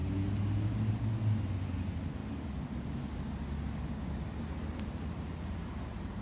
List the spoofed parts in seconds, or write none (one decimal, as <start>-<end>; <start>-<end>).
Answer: none